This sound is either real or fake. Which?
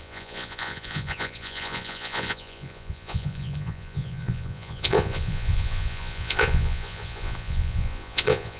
fake